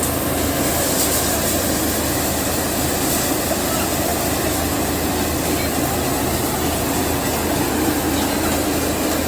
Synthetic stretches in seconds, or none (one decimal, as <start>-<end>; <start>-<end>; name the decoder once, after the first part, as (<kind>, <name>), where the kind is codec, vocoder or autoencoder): none

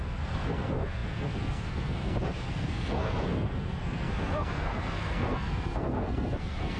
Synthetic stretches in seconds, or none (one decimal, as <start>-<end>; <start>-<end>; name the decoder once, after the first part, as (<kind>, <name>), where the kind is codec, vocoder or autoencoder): 0.0-6.8 (codec, SNAC)